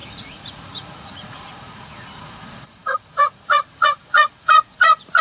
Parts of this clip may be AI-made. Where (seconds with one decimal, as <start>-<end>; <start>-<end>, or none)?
0.0-5.2